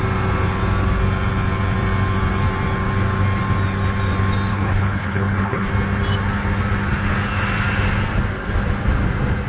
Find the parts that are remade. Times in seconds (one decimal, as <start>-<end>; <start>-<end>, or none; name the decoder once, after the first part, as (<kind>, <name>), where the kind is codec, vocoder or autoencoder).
4.5-5.7 (codec, HILCodec)